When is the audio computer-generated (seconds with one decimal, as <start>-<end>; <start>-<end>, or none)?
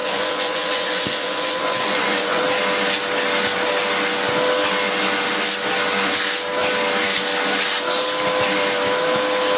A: 0.0-2.4